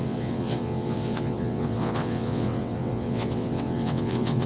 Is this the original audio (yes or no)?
no